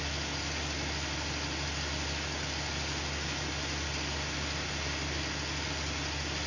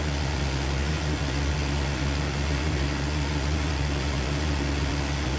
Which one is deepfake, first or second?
second